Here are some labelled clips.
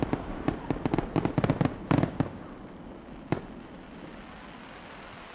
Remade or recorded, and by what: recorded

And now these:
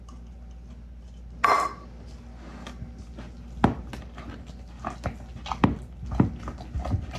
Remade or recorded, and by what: recorded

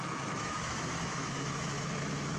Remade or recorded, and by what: remade, autoencoder, DAC-VAE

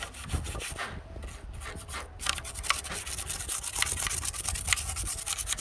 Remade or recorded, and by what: recorded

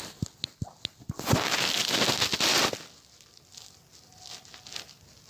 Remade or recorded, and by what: recorded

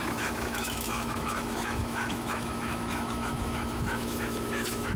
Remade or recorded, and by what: remade, autoencoder, DAC-VAE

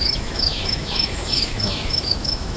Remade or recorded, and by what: remade, autoencoder, DAC-VAE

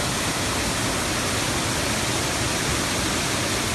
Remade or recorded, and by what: recorded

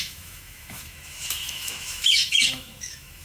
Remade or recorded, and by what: remade, autoencoder, DAC-VAE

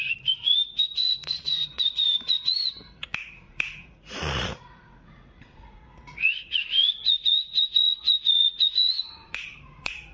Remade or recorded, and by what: remade, vocoder, Vocos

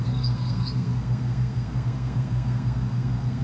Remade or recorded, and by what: remade, codec, SNAC